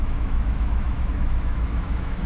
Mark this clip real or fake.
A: fake